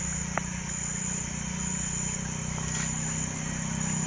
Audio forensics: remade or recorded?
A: recorded